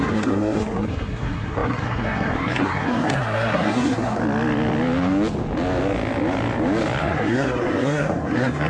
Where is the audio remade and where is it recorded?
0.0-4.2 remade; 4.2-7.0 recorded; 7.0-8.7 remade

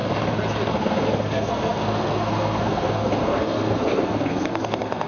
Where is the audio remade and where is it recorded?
0.0-0.7 recorded; 0.7-5.1 remade